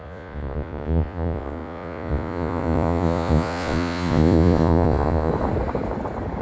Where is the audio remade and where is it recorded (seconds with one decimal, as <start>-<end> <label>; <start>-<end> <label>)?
0.0-5.3 remade; 5.3-6.4 recorded